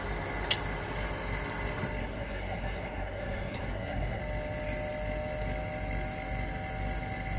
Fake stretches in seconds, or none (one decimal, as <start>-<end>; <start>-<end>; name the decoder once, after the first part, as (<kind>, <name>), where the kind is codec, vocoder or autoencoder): 2.0-4.2 (codec, SNAC)